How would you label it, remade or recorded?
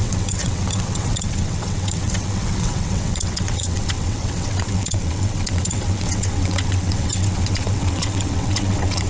remade